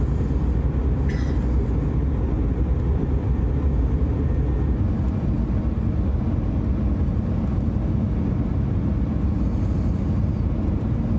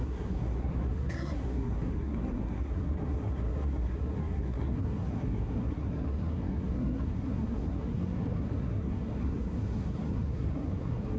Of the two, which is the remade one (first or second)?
second